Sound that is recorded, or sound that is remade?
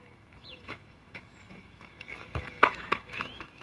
remade